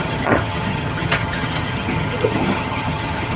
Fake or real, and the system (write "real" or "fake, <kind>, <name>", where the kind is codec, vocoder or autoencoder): fake, vocoder, HiFi-GAN